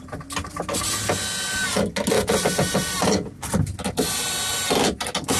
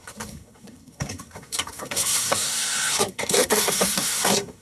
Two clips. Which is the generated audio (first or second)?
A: second